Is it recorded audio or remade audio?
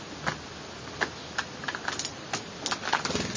recorded